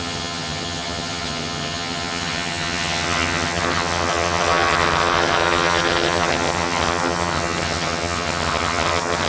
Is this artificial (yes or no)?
yes